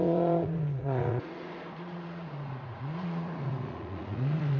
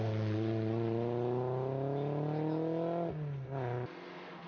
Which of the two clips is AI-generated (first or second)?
first